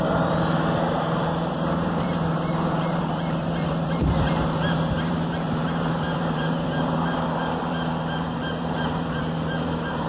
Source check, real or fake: fake